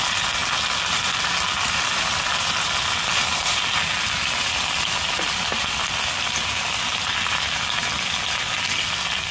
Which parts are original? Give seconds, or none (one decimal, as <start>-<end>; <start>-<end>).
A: 0.0-9.3